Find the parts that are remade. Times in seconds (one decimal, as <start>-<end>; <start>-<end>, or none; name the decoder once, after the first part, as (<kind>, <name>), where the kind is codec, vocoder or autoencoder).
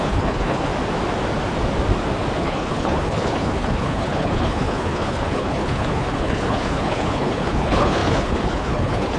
0.0-0.7 (codec, HILCodec); 2.4-9.2